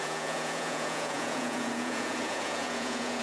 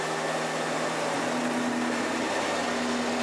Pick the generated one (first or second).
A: first